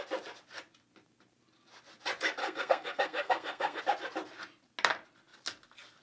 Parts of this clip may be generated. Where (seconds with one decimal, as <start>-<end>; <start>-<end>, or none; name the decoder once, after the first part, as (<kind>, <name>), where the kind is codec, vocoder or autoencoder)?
2.4-3.8 (codec, SNAC)